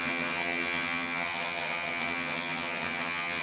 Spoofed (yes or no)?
yes